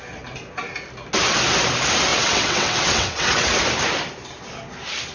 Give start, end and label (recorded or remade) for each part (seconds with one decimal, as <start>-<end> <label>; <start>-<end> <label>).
0.0-2.1 recorded; 2.1-3.6 remade; 3.6-5.1 recorded